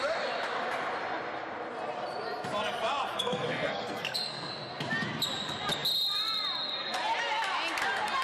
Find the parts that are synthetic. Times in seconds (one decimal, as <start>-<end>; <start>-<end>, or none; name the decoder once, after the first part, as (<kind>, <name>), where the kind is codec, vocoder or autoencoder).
3.1-4.5 (codec, SNAC)

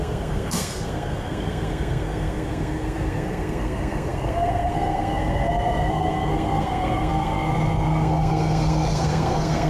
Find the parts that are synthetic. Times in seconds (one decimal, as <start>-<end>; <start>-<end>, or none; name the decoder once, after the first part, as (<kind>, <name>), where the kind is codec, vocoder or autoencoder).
0.0-9.7 (codec, SNAC)